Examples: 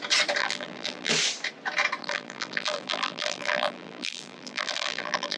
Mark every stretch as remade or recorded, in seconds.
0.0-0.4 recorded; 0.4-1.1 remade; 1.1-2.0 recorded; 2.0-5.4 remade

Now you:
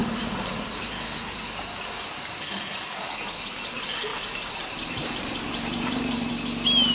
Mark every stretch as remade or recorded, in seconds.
0.0-4.1 recorded; 4.1-6.3 remade; 6.3-6.9 recorded

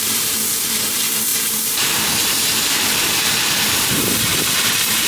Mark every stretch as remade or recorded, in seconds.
0.0-5.1 remade